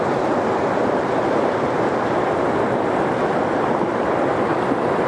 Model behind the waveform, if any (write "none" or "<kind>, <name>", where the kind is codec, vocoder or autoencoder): none